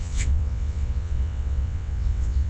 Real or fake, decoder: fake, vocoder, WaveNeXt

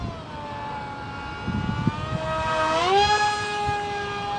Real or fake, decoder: real